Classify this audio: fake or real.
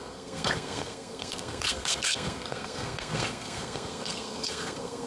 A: fake